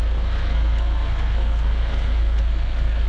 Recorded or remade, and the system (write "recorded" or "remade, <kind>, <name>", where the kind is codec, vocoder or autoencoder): remade, codec, SNAC